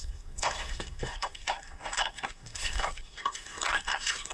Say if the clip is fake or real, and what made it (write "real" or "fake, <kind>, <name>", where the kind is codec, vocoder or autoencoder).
fake, codec, SNAC